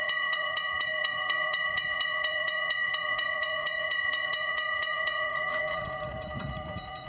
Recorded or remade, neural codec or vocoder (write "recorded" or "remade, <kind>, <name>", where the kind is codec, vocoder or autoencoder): remade, vocoder, Vocos